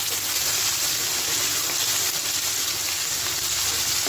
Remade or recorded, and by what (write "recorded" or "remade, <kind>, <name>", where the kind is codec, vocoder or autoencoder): recorded